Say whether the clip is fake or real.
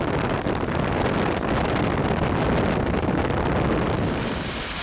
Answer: real